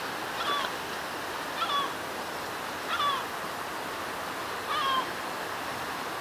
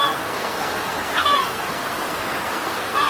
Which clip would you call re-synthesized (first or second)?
second